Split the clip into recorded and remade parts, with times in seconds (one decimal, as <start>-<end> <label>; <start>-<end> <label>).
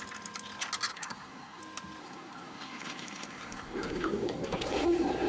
0.0-0.9 recorded; 0.9-1.6 remade; 1.6-2.0 recorded; 2.0-5.3 remade